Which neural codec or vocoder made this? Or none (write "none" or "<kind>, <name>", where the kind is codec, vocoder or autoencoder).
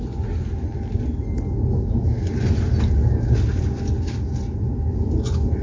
none